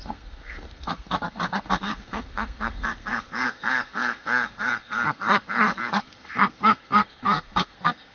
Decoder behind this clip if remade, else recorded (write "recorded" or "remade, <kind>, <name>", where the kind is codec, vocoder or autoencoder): remade, codec, SNAC